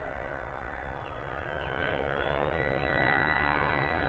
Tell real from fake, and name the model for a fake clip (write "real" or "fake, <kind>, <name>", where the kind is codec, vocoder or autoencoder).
fake, vocoder, WaveNeXt